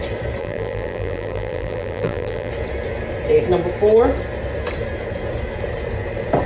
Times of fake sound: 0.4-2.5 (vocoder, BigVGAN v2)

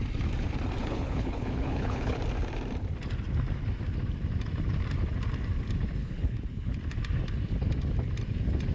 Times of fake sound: 0.8-2.2 (codec, HILCodec); 6.0-6.8

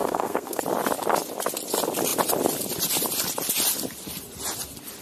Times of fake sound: 0.0-0.6 (codec, SNAC)

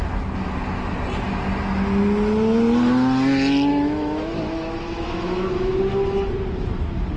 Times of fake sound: 3.7-5.8 (autoencoder, DAC-VAE)

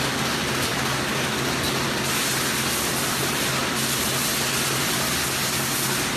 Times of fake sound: none

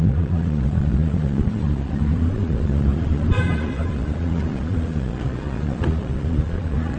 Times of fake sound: 0.0-7.0 (vocoder, Vocos)